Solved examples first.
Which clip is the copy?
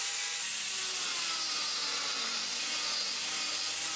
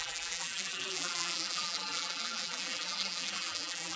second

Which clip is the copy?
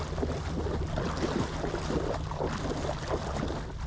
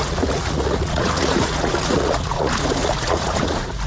second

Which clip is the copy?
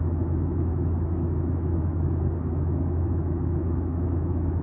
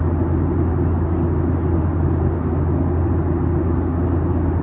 first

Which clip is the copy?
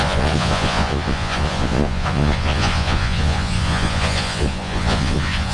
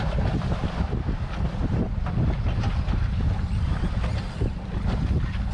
first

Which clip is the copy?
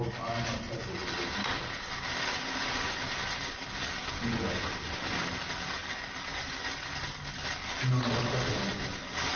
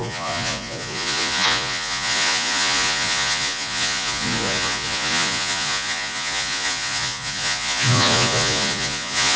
second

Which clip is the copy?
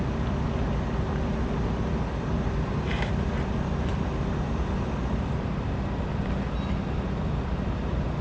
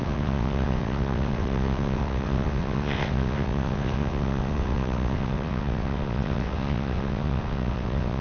second